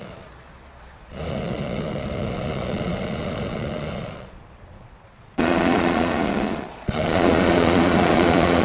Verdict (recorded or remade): remade